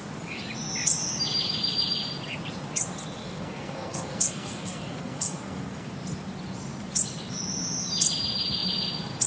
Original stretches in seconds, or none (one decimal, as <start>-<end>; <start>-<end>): 0.0-3.2; 5.9-9.3